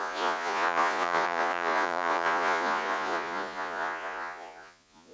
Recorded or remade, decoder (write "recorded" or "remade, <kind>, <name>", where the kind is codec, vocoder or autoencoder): remade, vocoder, Vocos